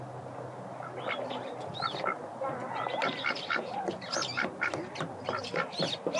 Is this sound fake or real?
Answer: real